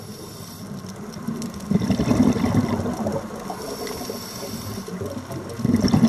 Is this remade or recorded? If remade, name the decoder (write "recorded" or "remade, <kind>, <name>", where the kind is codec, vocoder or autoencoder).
recorded